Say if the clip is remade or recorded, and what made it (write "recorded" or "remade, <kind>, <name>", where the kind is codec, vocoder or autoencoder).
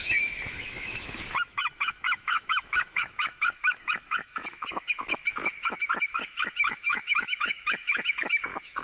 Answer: remade, autoencoder, DAC-VAE